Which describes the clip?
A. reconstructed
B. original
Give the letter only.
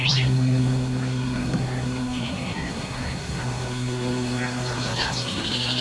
A